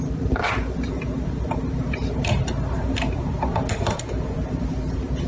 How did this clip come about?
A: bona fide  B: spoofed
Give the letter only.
B